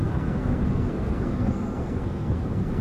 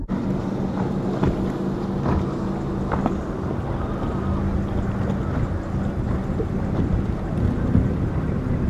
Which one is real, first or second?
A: second